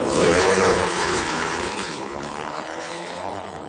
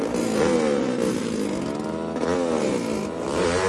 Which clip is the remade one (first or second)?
first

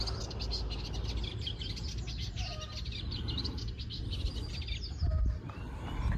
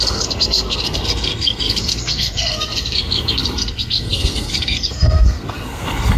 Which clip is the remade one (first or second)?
second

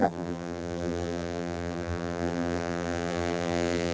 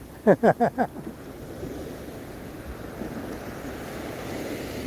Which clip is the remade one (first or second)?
first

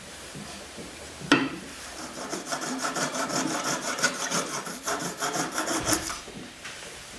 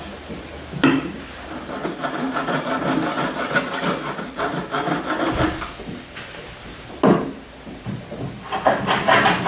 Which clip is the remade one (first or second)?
first